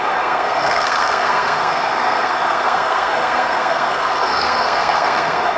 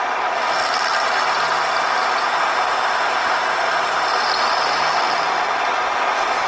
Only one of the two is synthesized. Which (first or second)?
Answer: first